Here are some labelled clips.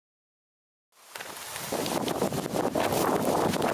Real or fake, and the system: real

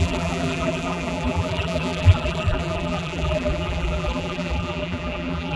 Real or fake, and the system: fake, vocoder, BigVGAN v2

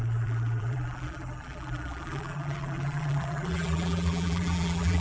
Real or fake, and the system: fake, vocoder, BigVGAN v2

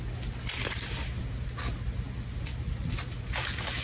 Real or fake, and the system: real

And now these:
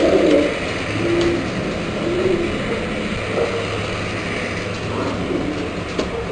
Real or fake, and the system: real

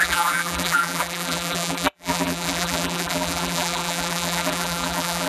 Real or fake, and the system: fake, vocoder, BigVGAN v2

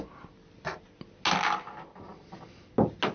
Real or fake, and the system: real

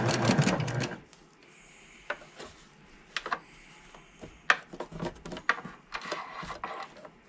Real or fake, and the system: real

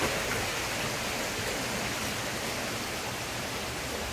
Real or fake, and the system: real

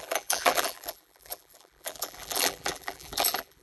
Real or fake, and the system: fake, vocoder, BigVGAN v2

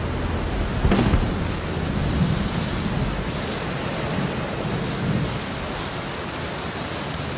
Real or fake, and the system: real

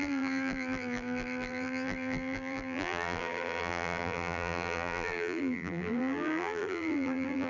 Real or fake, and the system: fake, vocoder, BigVGAN v2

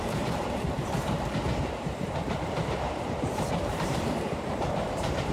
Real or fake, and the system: fake, vocoder, BigVGAN v2